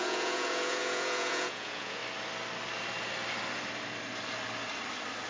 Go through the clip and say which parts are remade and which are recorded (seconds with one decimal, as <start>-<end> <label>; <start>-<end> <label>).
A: 0.0-2.0 remade; 2.0-5.3 recorded